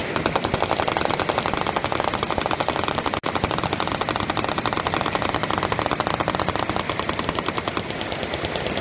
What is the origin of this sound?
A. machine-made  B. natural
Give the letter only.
A